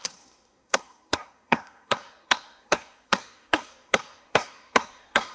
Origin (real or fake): fake